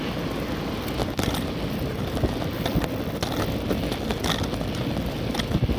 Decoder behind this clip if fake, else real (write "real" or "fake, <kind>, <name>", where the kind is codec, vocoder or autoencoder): real